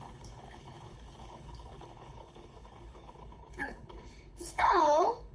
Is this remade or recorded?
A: remade